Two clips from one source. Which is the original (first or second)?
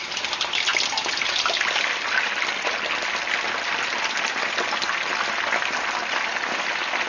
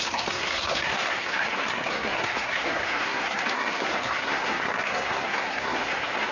first